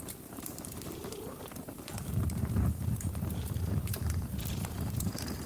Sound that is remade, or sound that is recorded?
remade